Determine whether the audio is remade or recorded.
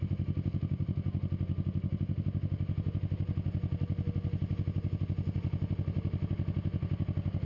recorded